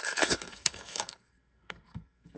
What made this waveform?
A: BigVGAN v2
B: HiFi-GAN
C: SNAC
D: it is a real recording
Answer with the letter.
C